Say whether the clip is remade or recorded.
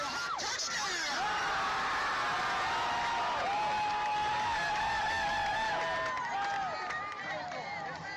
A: recorded